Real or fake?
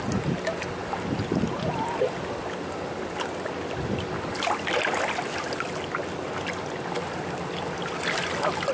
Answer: real